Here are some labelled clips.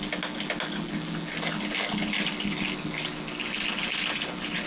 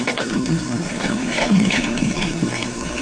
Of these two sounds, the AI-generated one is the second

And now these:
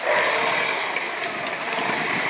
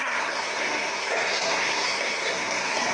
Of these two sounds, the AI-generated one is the second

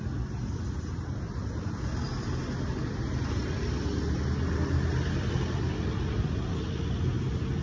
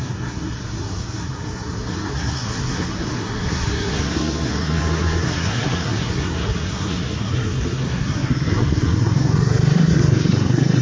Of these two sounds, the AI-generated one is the second